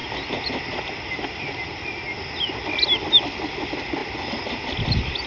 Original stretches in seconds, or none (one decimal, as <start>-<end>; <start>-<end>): 0.0-5.3